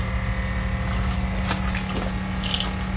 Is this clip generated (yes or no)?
no